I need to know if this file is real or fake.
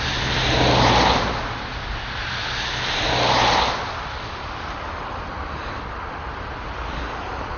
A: real